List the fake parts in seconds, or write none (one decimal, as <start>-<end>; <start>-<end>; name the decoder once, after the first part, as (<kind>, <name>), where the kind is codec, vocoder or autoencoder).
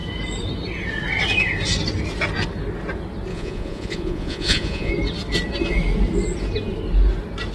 3.3-4.9 (vocoder, Vocos)